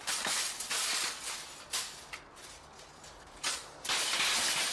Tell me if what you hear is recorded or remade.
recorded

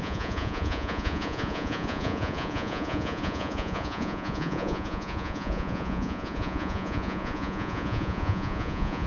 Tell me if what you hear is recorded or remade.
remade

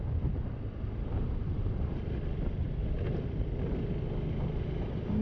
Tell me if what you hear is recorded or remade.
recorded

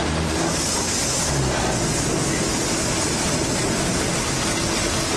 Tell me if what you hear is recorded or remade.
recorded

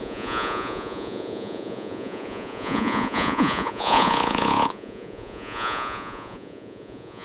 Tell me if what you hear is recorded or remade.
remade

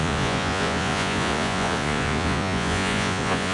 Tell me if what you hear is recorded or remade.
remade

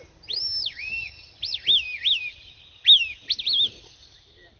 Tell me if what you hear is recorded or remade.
recorded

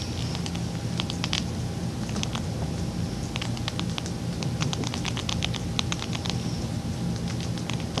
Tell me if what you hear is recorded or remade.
recorded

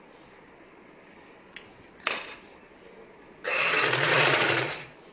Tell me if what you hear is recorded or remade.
remade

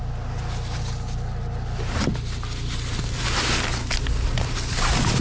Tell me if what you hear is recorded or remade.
recorded